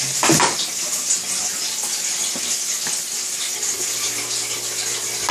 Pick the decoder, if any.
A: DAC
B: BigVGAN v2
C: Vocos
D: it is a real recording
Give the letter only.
D